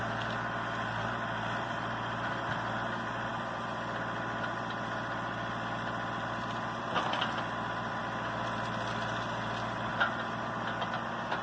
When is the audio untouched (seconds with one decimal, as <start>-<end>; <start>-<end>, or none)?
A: 0.0-11.4